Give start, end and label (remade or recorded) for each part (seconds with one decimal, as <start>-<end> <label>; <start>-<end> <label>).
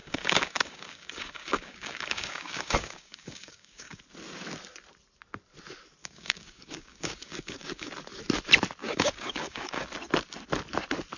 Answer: 0.0-4.0 remade; 4.0-6.0 recorded; 6.0-7.9 remade; 7.9-8.8 recorded; 8.8-9.9 remade; 9.9-11.2 recorded